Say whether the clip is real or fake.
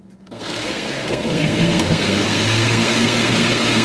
fake